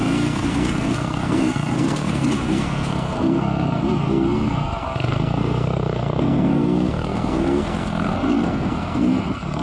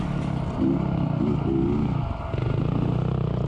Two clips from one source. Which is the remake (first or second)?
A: first